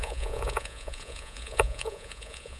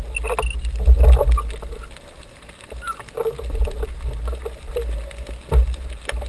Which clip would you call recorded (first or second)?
second